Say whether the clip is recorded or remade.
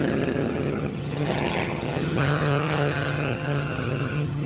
remade